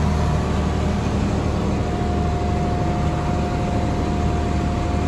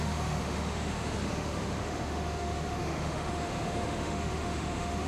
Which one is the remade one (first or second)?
second